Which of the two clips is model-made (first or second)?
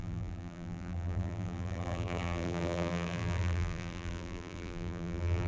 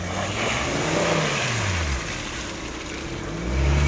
first